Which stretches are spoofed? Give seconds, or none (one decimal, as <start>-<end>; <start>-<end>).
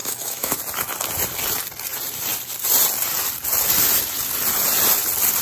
0.0-0.6